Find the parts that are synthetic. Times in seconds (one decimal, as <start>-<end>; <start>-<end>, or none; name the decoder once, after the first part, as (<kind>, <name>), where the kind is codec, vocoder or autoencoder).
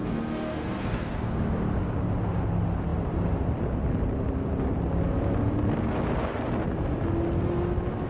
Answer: 0.0-1.3 (codec, SNAC)